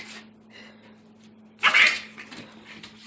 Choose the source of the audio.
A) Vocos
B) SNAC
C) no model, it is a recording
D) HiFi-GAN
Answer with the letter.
C